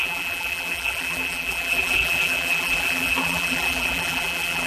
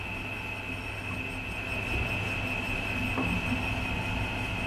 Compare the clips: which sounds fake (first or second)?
first